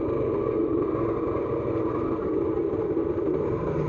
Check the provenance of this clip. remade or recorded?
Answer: recorded